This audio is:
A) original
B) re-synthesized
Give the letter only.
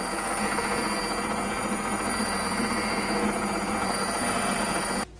B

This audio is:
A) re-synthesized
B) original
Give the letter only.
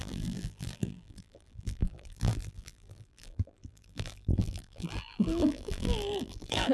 A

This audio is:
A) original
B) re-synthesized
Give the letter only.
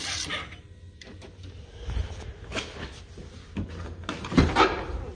A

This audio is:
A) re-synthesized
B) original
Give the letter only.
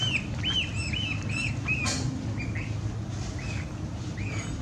B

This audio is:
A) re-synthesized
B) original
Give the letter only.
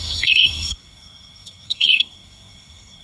A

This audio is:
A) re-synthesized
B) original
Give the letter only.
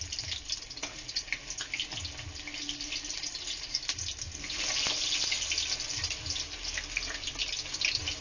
B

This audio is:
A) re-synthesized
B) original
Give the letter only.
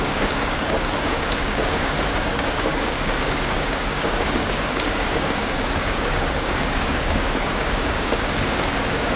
A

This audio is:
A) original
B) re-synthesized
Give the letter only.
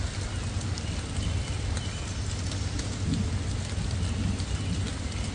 A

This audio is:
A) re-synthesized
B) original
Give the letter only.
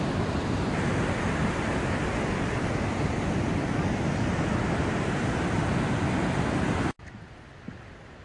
B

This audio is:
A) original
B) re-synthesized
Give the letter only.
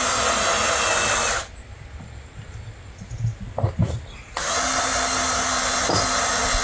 A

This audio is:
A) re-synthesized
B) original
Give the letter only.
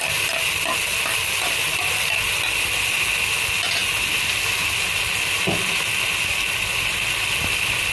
B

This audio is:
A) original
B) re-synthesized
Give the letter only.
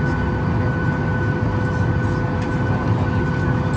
A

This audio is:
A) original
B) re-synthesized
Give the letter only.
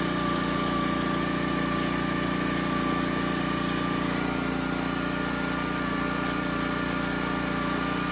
A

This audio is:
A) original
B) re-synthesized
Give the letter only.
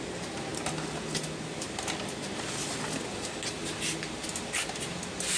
A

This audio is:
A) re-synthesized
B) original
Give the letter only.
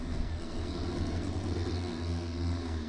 A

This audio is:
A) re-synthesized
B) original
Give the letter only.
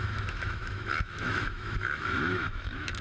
A